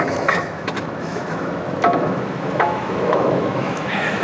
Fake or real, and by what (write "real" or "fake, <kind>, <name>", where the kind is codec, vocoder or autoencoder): fake, autoencoder, DAC-VAE